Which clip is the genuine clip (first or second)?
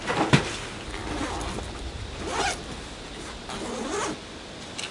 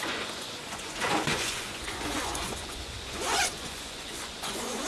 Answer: first